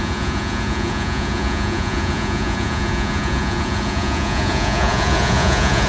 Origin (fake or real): fake